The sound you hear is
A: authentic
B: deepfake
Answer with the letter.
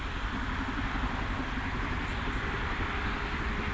A